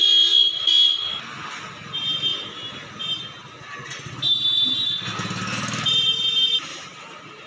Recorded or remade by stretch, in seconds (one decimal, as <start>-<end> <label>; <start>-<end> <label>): 0.0-7.5 recorded

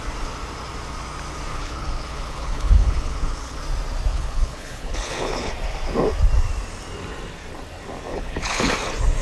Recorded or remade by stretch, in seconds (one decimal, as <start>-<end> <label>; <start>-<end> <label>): 0.0-1.5 recorded; 1.5-3.6 remade; 3.6-4.1 recorded; 4.1-5.5 remade; 5.5-8.1 recorded; 8.1-8.7 remade; 8.7-9.2 recorded

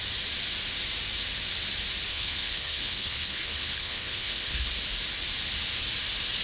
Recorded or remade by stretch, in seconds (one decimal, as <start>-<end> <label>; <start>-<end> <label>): 0.0-2.1 recorded; 2.1-4.7 remade; 4.7-6.4 recorded

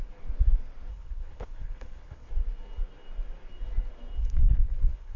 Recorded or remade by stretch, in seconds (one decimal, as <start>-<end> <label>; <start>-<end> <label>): 0.0-0.9 recorded; 0.9-2.3 remade; 2.3-4.2 recorded; 4.2-5.2 remade

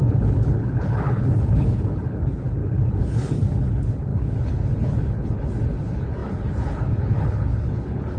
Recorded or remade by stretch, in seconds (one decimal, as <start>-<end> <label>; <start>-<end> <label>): 0.0-8.2 remade